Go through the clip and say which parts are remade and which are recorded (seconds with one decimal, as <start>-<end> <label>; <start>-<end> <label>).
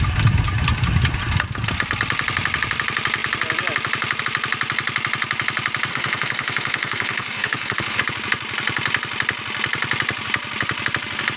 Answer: 0.0-5.9 recorded; 5.9-8.0 remade; 8.0-11.4 recorded